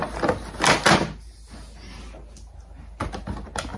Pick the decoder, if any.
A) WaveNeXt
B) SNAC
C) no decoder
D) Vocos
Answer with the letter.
C